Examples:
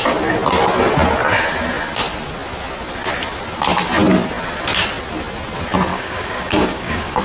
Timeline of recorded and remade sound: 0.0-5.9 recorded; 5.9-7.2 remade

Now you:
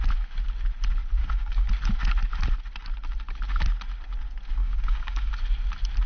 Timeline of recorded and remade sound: 0.0-1.2 recorded; 1.2-1.7 remade; 1.7-4.6 recorded; 4.6-5.3 remade; 5.3-6.1 recorded

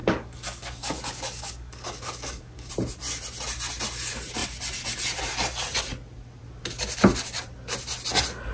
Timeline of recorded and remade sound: 0.0-2.7 remade; 2.7-8.5 recorded

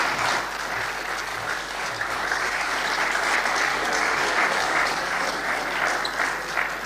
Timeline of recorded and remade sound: 0.0-1.3 recorded; 1.3-2.7 remade; 2.7-3.7 recorded; 3.7-5.6 remade; 5.6-6.9 recorded

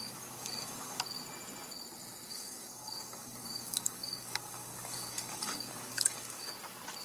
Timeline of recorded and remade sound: 0.0-1.0 remade; 1.0-2.3 recorded; 2.3-6.5 remade; 6.5-7.0 recorded